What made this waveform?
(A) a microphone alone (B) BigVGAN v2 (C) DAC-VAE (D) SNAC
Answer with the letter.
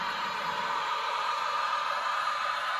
B